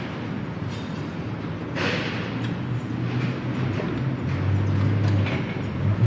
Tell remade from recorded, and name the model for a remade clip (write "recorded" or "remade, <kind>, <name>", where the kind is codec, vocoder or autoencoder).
recorded